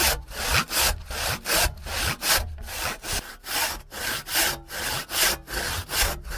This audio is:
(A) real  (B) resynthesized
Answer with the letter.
A